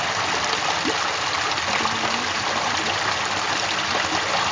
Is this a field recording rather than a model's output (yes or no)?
yes